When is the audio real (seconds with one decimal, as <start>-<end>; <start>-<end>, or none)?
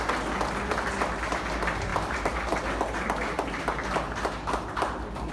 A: 0.0-1.9; 2.4-5.3